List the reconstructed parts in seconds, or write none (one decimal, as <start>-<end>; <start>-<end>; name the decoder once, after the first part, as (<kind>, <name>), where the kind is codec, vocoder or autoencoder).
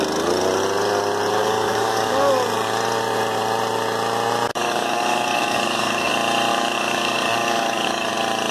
1.4-2.3 (codec, DAC); 4.5-6.1; 6.5-8.1